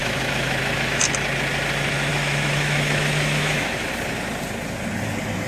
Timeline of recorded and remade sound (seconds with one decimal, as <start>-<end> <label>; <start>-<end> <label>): 0.0-1.0 remade; 1.0-2.1 recorded; 2.1-3.9 remade; 3.9-5.5 recorded